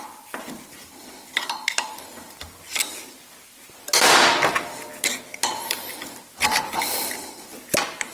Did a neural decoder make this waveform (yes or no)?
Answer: no